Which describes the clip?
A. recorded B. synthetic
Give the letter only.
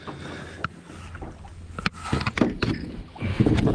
A